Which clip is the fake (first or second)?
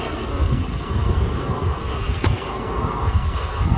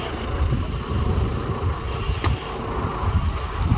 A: first